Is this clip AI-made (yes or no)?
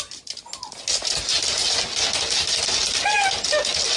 no